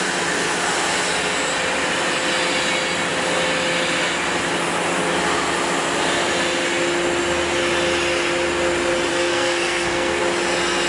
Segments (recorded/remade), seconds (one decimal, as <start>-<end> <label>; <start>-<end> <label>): 0.0-9.1 recorded; 9.1-10.2 remade; 10.2-10.9 recorded